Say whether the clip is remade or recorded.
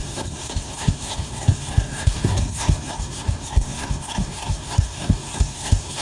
remade